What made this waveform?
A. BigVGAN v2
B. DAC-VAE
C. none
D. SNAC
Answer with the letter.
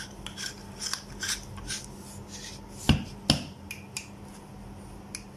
C